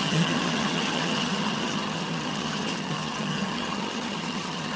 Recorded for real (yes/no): no